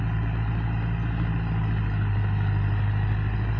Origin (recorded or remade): recorded